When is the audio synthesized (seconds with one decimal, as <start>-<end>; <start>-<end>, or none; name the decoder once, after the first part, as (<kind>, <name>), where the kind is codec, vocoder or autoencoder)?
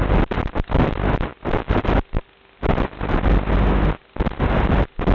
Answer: none